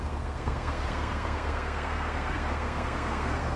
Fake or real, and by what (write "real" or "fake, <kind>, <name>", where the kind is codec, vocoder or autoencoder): fake, codec, SNAC